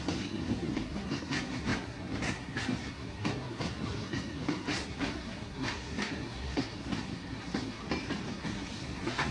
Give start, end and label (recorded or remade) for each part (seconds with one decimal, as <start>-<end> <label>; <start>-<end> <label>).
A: 0.0-7.8 remade; 7.8-8.3 recorded; 8.3-9.3 remade